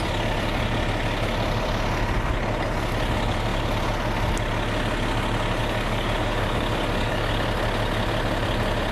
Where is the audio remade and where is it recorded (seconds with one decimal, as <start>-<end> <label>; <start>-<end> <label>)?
0.0-5.6 recorded; 5.6-7.3 remade; 7.3-8.9 recorded